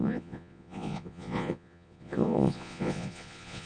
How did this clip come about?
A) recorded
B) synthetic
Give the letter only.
B